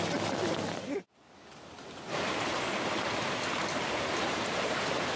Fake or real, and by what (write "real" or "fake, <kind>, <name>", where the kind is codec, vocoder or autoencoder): real